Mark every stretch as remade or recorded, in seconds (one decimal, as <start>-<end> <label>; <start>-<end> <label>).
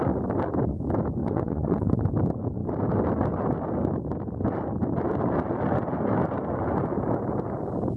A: 0.0-1.2 recorded; 1.2-2.0 remade; 2.0-8.0 recorded